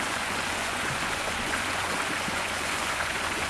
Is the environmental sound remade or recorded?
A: remade